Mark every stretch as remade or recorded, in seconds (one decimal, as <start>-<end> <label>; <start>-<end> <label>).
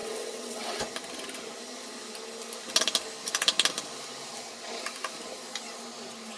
0.0-0.8 remade; 0.8-6.4 recorded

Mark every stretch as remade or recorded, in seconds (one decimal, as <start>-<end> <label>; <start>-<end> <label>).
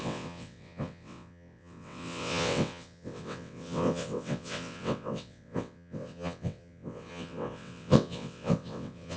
0.0-9.2 remade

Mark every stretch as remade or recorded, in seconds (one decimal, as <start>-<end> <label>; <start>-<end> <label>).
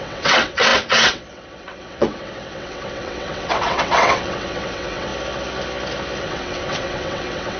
0.0-5.1 remade; 5.1-6.2 recorded; 6.2-7.6 remade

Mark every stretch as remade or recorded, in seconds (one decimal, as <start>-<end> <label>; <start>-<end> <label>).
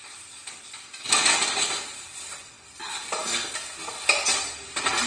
0.0-5.1 recorded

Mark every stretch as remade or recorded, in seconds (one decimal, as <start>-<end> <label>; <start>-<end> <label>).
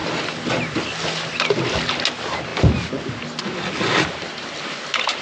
0.0-5.2 recorded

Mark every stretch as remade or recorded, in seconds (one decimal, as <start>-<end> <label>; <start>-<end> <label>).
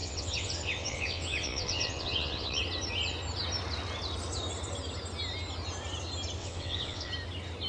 0.0-2.6 remade; 2.6-6.4 recorded; 6.4-7.1 remade; 7.1-7.7 recorded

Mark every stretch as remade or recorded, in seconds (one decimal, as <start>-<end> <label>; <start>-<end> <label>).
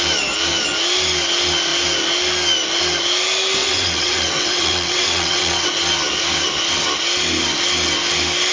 0.0-3.6 recorded; 3.6-5.7 remade; 5.7-8.5 recorded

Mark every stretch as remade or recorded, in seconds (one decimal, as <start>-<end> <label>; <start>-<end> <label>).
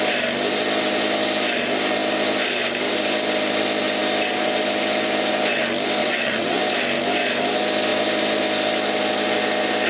0.0-6.0 recorded; 6.0-6.6 remade; 6.6-9.9 recorded